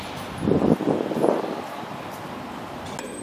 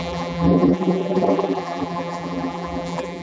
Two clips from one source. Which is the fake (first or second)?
second